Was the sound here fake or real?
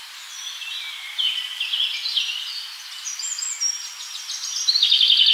real